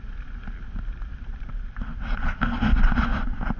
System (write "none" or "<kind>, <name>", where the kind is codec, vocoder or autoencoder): none